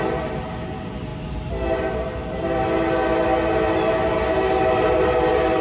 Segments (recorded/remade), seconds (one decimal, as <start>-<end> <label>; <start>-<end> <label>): 0.0-5.6 recorded